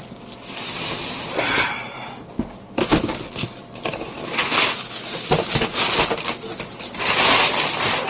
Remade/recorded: recorded